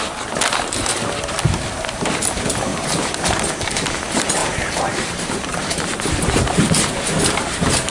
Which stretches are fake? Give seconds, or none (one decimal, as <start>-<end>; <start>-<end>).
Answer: 2.7-3.5; 4.4-7.9